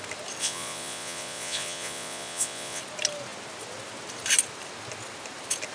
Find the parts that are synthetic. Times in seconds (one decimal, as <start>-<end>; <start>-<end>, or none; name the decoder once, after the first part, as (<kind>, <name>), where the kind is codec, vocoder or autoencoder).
0.4-2.8 (vocoder, Vocos)